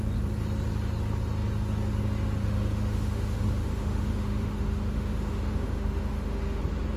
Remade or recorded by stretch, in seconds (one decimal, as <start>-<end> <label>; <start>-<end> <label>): 0.0-2.4 recorded; 2.4-6.6 remade; 6.6-7.0 recorded